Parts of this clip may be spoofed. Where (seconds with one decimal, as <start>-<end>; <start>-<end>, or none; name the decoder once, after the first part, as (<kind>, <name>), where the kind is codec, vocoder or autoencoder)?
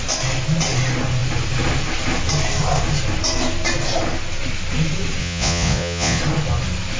5.2-6.2 (vocoder, Vocos)